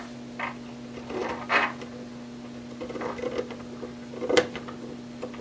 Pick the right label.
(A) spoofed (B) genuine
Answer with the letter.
B